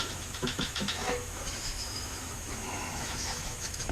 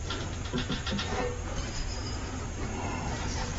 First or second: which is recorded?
second